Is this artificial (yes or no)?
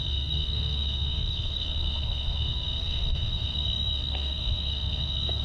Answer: yes